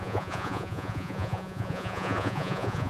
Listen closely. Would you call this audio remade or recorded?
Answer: remade